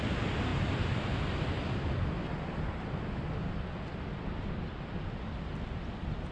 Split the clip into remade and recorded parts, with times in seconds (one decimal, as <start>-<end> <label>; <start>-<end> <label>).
0.0-6.3 recorded